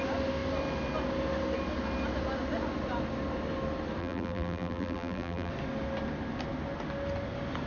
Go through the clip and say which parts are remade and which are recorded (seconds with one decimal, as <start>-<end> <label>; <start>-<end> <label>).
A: 0.0-4.0 recorded; 4.0-5.5 remade; 5.5-7.7 recorded